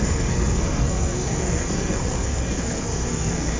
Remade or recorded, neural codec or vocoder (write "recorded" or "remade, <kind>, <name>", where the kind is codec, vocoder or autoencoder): remade, codec, SNAC